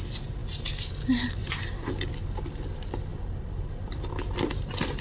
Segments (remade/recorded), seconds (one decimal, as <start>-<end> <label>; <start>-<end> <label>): 0.0-3.1 recorded; 3.1-4.6 remade; 4.6-5.0 recorded